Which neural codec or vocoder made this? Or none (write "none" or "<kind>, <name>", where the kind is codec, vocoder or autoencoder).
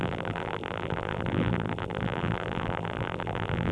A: vocoder, BigVGAN v2